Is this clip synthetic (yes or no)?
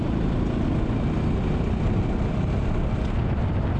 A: no